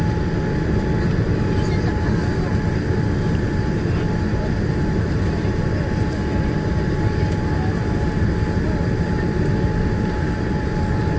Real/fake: real